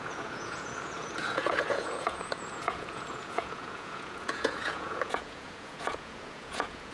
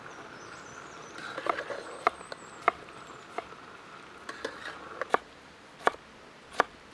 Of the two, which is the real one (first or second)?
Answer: second